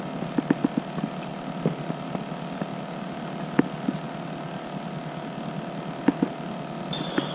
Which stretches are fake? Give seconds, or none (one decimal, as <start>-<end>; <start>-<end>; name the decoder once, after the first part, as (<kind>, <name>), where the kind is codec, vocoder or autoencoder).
none